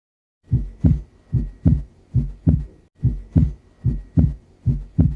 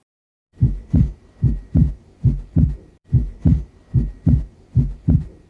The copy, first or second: second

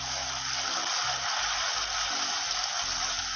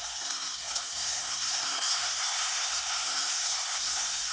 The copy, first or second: second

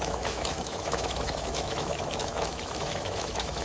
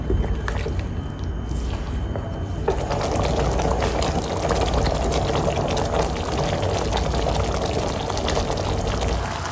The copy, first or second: first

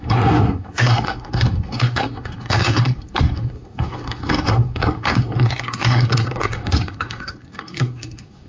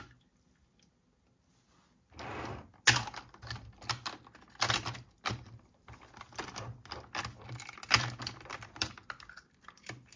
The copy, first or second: first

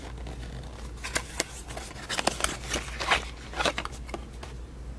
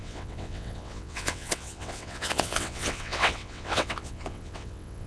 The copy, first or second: second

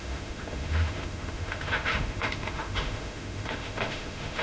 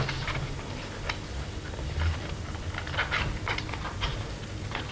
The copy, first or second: first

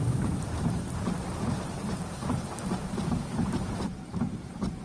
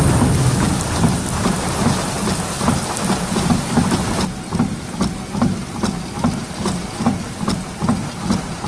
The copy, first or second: first